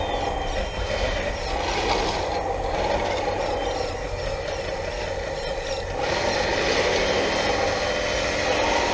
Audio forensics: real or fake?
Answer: real